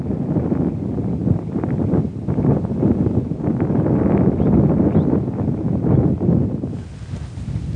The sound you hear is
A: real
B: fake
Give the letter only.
A